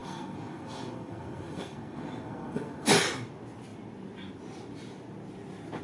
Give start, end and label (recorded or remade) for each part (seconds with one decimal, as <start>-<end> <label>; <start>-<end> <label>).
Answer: 0.0-2.9 remade; 2.9-5.8 recorded